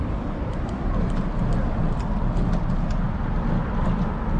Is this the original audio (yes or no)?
yes